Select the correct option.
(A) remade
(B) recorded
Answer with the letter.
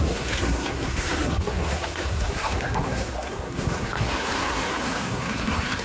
A